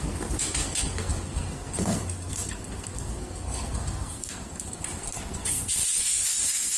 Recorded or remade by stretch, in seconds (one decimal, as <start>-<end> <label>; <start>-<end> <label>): 0.0-6.8 remade